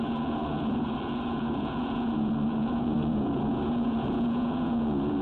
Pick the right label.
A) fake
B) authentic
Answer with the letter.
A